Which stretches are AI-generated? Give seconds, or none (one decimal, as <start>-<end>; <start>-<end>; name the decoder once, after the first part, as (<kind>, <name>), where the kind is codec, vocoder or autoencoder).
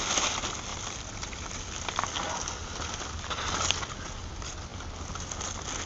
0.7-1.7 (vocoder, BigVGAN v2); 2.6-4.3